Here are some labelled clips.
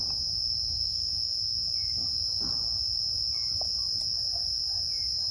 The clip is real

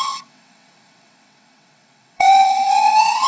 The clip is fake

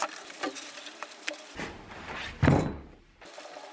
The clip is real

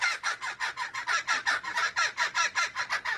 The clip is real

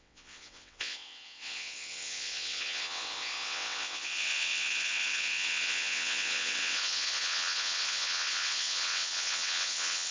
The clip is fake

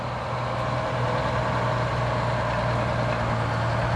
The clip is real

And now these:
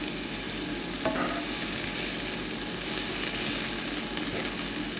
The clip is real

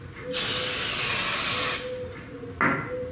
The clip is real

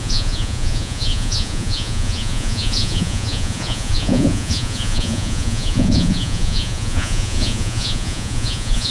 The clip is fake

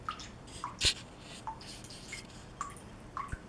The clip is real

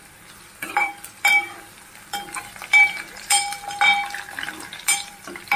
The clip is fake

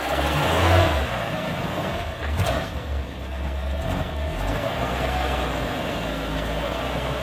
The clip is fake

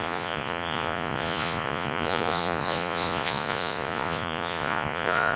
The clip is fake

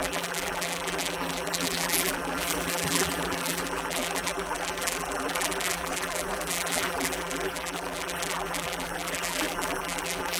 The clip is fake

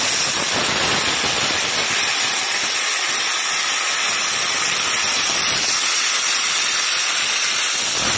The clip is real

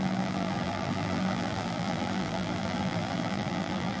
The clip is fake